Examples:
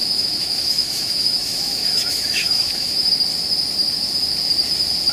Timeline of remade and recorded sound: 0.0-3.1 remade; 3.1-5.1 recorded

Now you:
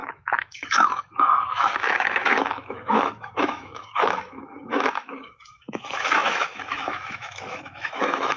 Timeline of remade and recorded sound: 0.0-8.4 remade

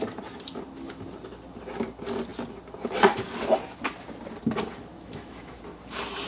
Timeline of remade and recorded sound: 0.0-4.9 recorded; 4.9-5.6 remade; 5.6-6.3 recorded